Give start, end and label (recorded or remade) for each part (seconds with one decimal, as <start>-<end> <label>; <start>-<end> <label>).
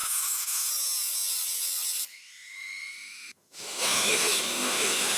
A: 0.0-0.7 remade; 0.7-2.1 recorded; 2.1-5.2 remade